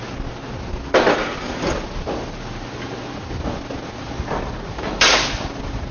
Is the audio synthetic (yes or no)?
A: no